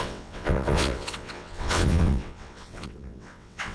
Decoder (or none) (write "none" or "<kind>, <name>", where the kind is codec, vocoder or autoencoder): vocoder, WaveNeXt